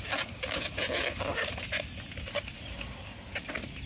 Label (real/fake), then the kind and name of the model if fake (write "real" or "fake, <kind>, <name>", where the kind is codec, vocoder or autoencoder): real